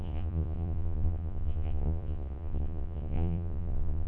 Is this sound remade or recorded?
remade